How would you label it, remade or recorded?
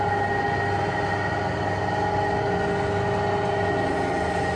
recorded